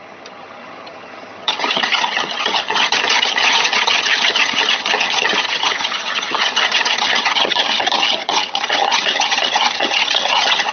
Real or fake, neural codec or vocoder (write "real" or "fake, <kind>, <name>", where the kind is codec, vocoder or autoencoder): fake, vocoder, HiFi-GAN